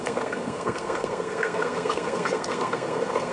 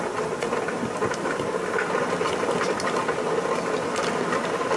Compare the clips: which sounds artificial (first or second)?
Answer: first